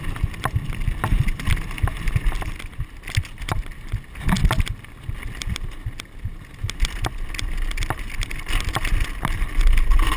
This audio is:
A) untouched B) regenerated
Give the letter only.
A